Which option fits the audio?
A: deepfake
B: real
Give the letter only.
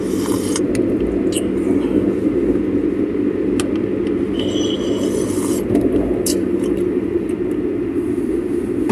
B